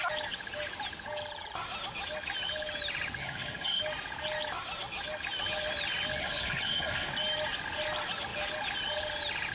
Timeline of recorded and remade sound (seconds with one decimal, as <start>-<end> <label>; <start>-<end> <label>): 0.0-3.2 recorded; 3.2-3.8 remade; 3.8-6.2 recorded; 6.2-7.1 remade; 7.1-9.5 recorded